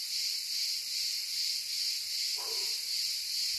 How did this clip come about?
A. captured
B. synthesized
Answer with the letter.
A